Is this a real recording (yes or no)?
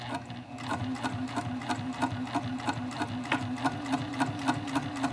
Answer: yes